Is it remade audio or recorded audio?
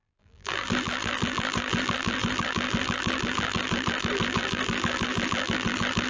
remade